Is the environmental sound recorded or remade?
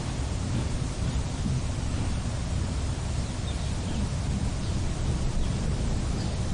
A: recorded